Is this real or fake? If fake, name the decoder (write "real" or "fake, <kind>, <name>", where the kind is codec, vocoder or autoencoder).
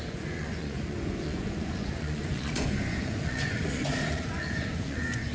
fake, vocoder, Vocos